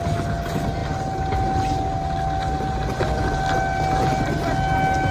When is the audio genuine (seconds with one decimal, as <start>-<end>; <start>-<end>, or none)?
0.0-5.1